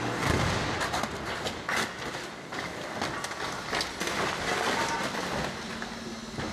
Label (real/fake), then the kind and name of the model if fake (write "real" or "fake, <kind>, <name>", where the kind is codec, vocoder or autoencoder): real